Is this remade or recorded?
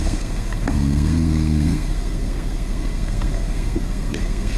remade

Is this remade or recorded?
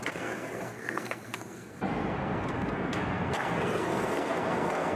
remade